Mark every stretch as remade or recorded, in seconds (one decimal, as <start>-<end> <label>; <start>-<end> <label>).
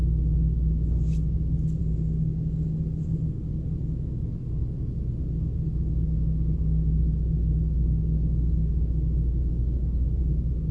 0.0-10.7 recorded